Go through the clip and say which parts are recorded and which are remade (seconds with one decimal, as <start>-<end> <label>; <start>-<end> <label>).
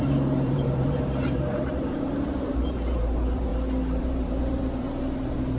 0.0-3.5 remade; 3.5-4.0 recorded; 4.0-5.6 remade